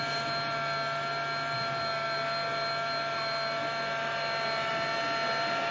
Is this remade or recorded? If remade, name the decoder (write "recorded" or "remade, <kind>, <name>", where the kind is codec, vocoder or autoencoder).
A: recorded